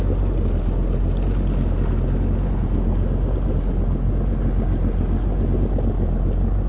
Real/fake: real